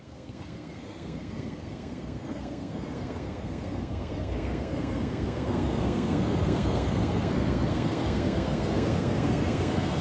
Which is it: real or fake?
fake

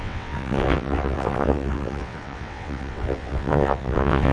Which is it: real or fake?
fake